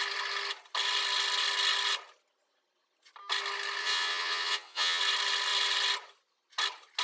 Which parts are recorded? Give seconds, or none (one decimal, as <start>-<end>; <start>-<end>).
0.0-3.8; 5.0-7.0